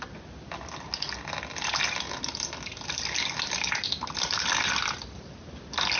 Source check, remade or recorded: recorded